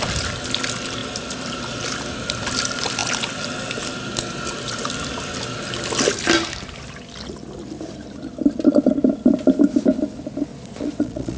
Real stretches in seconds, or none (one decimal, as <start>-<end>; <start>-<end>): 0.0-10.5